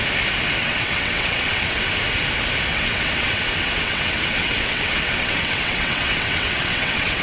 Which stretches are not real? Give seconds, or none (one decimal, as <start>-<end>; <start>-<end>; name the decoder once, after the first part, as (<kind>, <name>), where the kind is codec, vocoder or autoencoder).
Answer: 0.6-1.8 (vocoder, WaveNeXt); 2.7-7.2